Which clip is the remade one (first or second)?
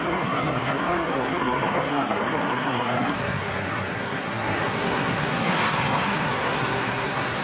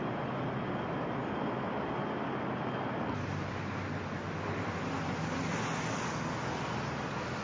first